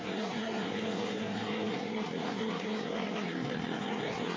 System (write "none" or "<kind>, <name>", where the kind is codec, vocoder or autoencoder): codec, SNAC